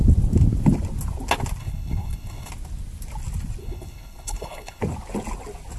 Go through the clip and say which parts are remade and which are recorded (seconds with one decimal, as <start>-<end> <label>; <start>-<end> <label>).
0.0-1.6 recorded; 1.6-2.5 remade; 2.5-3.6 recorded; 3.6-4.8 remade; 4.8-5.8 recorded